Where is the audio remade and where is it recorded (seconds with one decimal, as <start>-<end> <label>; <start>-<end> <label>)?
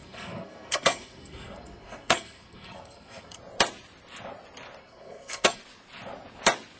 0.0-3.4 remade; 3.4-4.8 recorded; 4.8-5.6 remade; 5.6-6.8 recorded